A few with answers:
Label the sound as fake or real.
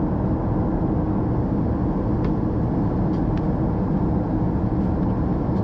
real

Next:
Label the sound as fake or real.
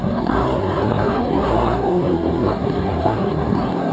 fake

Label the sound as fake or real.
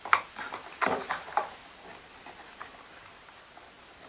fake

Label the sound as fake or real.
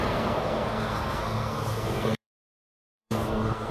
fake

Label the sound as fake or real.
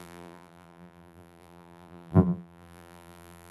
fake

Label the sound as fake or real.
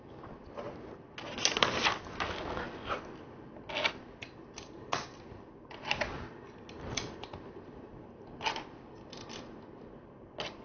real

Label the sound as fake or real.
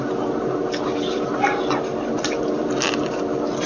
real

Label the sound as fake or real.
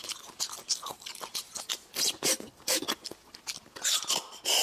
real